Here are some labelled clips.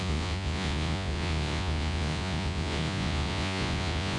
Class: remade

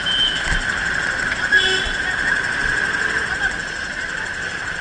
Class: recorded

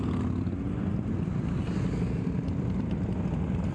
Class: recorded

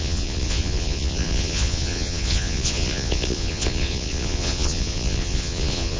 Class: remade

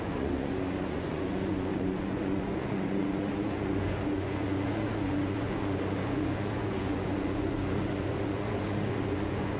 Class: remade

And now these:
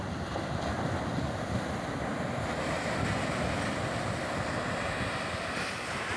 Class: recorded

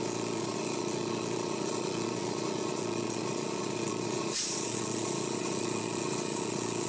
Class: remade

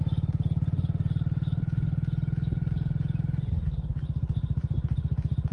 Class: recorded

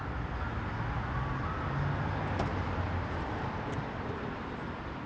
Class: recorded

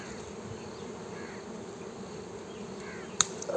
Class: recorded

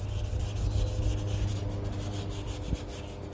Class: recorded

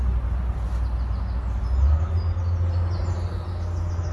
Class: recorded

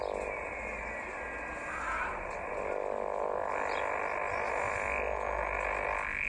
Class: recorded